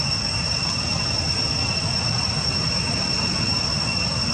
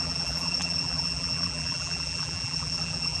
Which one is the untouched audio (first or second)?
first